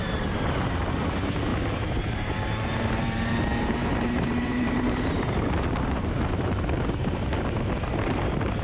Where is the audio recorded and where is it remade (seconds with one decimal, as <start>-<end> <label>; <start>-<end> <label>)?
0.0-8.6 remade